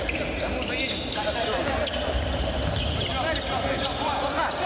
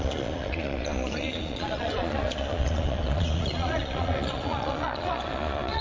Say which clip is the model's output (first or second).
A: second